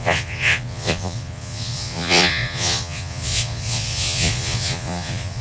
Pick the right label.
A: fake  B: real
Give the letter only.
A